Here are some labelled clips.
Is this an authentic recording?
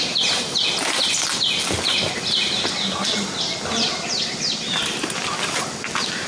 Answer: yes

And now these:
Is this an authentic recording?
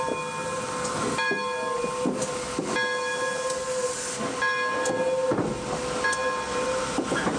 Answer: yes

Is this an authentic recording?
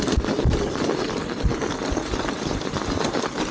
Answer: yes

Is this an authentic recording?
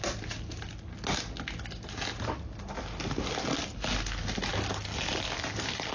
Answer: yes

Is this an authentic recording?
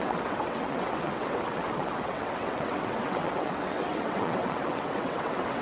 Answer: no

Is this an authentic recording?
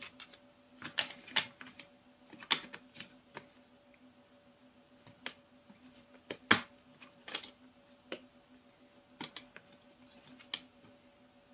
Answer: yes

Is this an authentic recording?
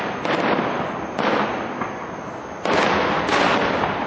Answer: yes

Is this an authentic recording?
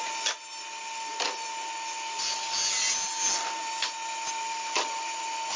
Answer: yes